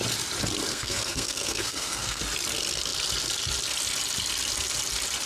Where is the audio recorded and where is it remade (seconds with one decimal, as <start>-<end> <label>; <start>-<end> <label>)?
0.0-0.7 recorded; 0.7-2.2 remade; 2.2-5.3 recorded